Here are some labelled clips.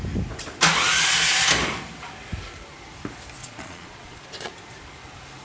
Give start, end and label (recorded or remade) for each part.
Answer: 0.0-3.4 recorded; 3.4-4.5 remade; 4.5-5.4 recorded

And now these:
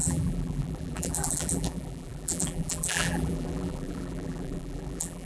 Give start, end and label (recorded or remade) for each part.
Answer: 0.0-5.3 remade

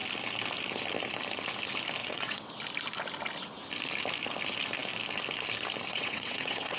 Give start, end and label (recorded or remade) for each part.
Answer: 0.0-2.0 recorded; 2.0-2.5 remade; 2.5-5.9 recorded; 5.9-6.8 remade

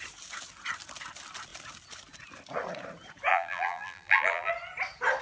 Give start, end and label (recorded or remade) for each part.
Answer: 0.0-3.3 recorded; 3.3-4.5 remade; 4.5-5.2 recorded